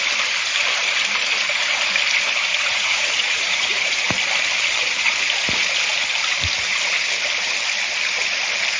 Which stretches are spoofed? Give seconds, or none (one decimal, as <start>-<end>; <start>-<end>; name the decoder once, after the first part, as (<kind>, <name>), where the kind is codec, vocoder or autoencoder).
2.5-4.0 (vocoder, Vocos)